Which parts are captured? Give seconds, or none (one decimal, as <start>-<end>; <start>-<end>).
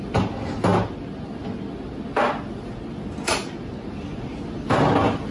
0.0-5.3